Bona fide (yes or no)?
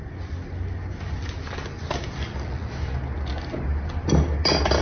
yes